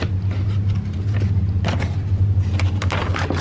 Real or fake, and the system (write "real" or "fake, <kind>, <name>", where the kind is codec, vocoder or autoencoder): real